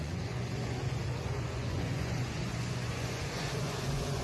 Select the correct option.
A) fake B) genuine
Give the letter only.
A